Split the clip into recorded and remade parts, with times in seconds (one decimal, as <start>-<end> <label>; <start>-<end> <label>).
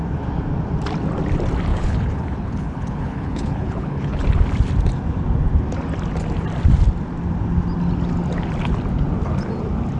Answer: 0.0-1.7 recorded; 1.7-4.2 remade; 4.2-10.0 recorded